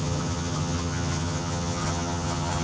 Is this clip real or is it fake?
fake